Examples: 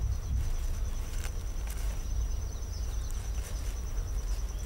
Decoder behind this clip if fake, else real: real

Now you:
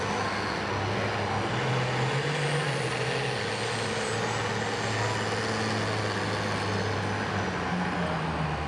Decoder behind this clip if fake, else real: real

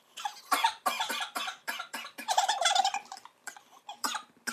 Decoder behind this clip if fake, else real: fake, vocoder, BigVGAN v2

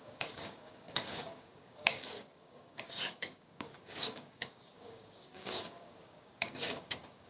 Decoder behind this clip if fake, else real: fake, codec, DAC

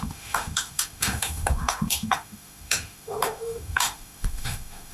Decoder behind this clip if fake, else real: fake, autoencoder, DAC-VAE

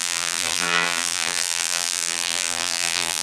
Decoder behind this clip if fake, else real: fake, vocoder, BigVGAN v2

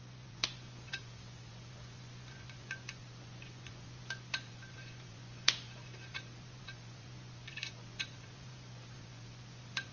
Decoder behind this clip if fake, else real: fake, vocoder, Vocos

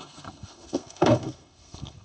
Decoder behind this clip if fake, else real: fake, codec, SNAC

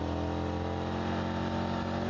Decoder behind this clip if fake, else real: real